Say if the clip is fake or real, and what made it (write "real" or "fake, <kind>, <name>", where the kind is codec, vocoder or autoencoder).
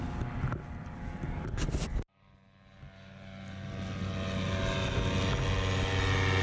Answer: real